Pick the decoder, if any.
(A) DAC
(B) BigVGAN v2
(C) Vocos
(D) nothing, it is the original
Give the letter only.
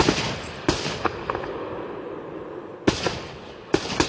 D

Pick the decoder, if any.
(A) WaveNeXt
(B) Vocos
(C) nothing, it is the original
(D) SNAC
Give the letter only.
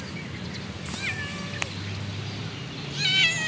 C